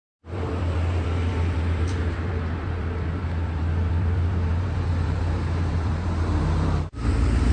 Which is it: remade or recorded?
remade